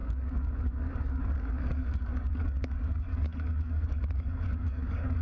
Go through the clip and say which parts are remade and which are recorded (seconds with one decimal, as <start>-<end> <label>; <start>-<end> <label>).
0.0-5.2 remade

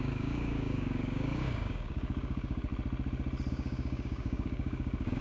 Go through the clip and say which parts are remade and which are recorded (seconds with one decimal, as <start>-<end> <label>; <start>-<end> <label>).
0.0-2.7 remade; 2.7-3.5 recorded; 3.5-5.2 remade

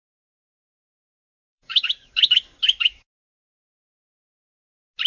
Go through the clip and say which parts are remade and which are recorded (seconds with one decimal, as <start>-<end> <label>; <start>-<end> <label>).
0.0-1.3 recorded; 1.3-3.6 remade; 3.6-5.1 recorded

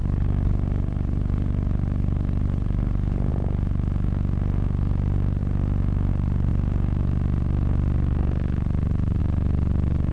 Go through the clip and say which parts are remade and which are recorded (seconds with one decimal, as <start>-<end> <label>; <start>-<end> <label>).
0.0-3.3 remade; 3.3-10.1 recorded

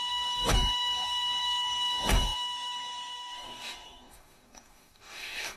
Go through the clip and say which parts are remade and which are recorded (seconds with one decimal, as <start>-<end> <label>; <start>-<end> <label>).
0.0-5.6 remade

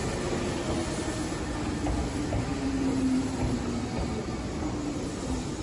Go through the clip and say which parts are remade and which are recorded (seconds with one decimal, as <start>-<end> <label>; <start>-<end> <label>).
0.0-5.6 recorded

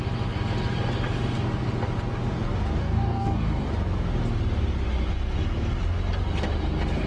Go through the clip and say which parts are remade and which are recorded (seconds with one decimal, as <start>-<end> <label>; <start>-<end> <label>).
0.0-2.8 recorded; 2.8-3.7 remade; 3.7-7.1 recorded